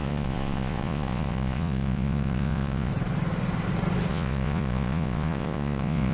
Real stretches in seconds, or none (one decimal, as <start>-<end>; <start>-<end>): 2.9-4.1